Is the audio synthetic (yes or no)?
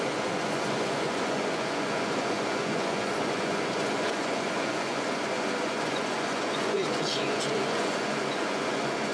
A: yes